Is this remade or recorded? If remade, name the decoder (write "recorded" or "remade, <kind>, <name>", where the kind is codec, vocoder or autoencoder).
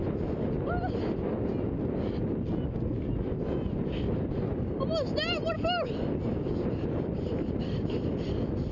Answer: recorded